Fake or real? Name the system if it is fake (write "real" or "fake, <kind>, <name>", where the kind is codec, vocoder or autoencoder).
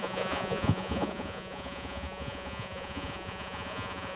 fake, vocoder, Vocos